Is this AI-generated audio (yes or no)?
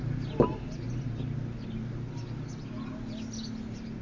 no